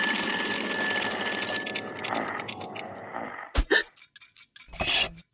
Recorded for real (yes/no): yes